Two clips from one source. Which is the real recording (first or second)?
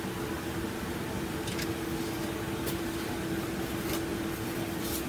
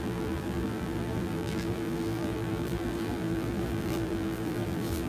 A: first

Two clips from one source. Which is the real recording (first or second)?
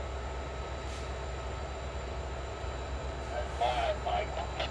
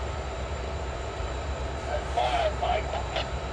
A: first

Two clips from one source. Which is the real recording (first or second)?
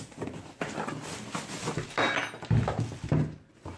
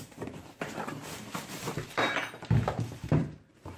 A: first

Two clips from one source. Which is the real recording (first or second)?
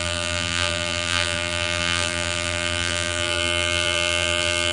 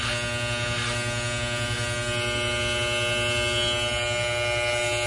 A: second